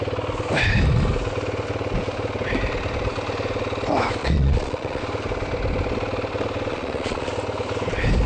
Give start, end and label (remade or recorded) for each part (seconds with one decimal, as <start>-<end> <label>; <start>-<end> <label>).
0.0-4.2 recorded; 4.2-5.0 remade; 5.0-6.7 recorded; 6.7-7.3 remade; 7.3-8.3 recorded